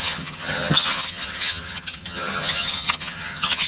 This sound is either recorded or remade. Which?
remade